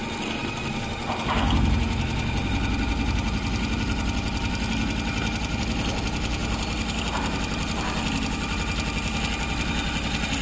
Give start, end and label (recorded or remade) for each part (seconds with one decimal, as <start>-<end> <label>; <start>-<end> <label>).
0.0-10.4 recorded